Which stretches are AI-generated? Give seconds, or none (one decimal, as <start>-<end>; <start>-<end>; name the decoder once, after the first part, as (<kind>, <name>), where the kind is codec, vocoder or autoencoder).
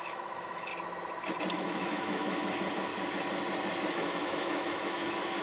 0.0-0.7 (autoencoder, DAC-VAE); 1.5-2.9; 3.9-5.4